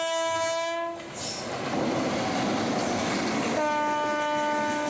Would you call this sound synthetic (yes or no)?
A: no